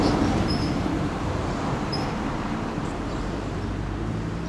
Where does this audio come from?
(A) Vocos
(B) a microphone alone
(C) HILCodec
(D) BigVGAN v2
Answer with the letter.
D